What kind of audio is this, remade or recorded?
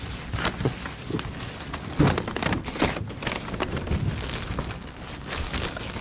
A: recorded